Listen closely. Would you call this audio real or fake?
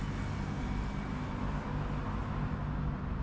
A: real